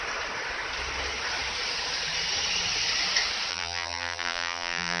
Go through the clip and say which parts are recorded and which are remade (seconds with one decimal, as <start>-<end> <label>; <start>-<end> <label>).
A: 0.0-3.5 recorded; 3.5-5.0 remade